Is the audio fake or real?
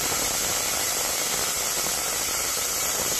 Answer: real